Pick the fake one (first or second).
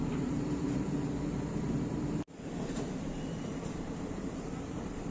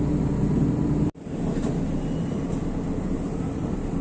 first